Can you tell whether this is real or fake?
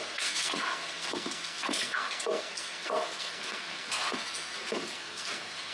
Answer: fake